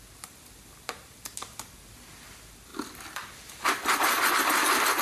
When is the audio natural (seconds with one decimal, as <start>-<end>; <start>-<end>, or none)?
0.0-2.7; 4.3-5.0